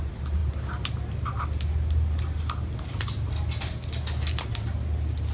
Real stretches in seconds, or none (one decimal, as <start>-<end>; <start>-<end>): 0.0-5.3